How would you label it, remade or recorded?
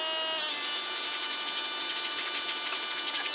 recorded